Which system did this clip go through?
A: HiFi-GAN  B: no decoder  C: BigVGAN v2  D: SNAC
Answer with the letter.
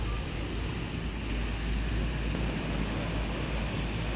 B